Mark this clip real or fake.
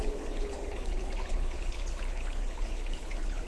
fake